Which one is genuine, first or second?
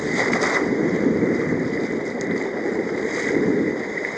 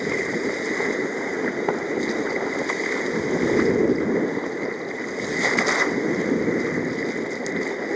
second